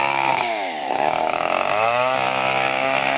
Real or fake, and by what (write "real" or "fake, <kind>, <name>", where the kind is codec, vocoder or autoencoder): fake, codec, DAC